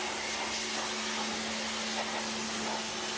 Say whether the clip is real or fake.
real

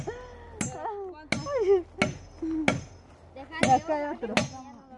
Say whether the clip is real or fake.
real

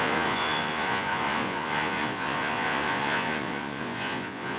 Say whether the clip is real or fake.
fake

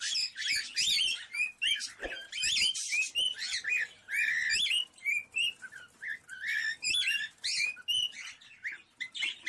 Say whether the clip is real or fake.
real